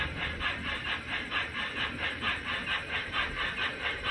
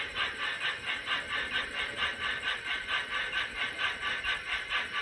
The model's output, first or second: first